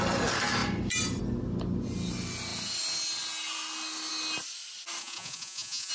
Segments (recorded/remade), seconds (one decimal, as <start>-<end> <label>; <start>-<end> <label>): 0.0-5.0 recorded; 5.0-5.9 remade